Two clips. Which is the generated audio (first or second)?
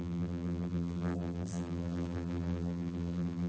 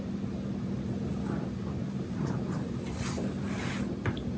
first